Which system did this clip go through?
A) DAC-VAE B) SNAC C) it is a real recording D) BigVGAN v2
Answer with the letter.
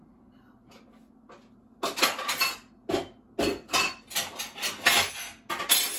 C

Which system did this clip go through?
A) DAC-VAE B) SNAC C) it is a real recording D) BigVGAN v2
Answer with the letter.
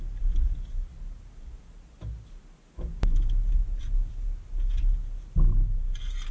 C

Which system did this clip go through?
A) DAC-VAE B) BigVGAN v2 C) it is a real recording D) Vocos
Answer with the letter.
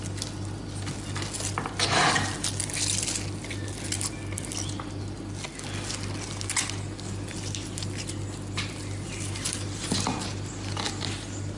C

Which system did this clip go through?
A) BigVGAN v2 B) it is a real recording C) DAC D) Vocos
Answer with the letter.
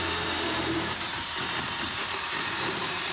A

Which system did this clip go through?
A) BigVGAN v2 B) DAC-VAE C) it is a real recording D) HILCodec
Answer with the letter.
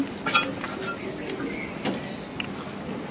C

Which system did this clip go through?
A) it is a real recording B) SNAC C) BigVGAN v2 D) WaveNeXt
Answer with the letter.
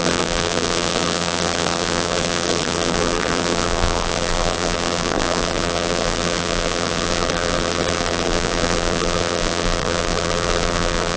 C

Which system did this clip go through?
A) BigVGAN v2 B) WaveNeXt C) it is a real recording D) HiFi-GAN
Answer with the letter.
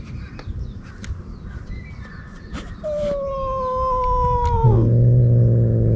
C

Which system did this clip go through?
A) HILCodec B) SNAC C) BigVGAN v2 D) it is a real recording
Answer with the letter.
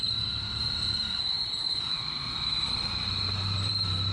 C